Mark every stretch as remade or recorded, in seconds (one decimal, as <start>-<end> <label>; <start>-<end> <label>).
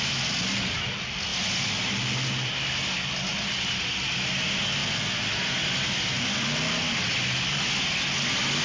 0.0-8.6 recorded